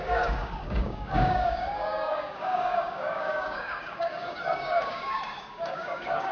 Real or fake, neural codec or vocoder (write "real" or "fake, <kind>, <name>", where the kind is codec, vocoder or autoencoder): fake, codec, DAC